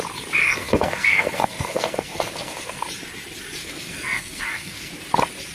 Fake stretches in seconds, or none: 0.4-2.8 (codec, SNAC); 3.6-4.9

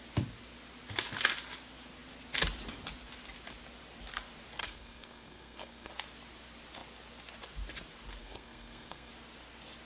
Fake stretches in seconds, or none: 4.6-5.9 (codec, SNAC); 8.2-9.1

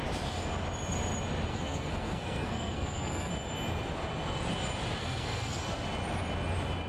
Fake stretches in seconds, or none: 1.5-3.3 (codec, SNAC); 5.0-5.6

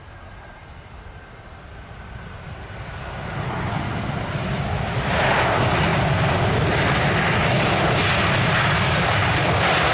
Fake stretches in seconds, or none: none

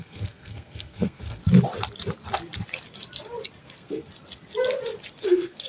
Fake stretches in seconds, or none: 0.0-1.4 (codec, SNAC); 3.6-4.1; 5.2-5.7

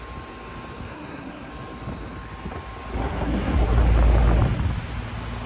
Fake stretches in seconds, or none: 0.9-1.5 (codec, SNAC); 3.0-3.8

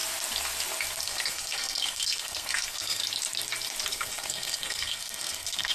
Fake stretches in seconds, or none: 1.0-3.0 (codec, SNAC); 3.9-5.7